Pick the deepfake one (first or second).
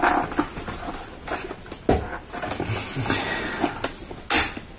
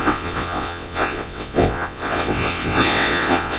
second